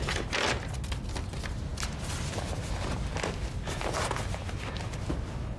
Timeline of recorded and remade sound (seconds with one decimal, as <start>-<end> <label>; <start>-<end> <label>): 0.0-5.6 recorded